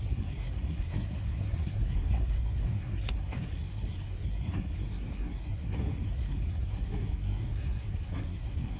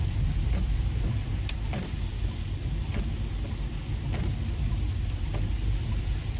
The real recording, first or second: second